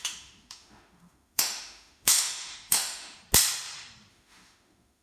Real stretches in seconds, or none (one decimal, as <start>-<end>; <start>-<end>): 3.2-4.1